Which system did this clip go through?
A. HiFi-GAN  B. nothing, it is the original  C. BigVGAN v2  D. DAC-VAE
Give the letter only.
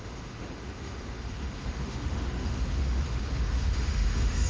D